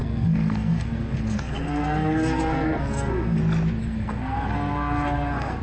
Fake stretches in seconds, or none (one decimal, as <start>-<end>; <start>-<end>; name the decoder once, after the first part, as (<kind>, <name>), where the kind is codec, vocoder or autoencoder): 0.0-3.4 (codec, SNAC); 3.8-5.6